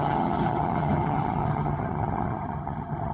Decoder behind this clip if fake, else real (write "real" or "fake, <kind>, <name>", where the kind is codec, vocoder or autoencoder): fake, vocoder, HiFi-GAN